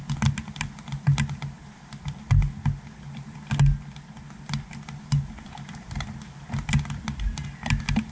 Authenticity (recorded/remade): recorded